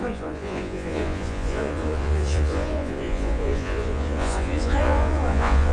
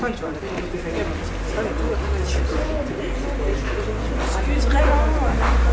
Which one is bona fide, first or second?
second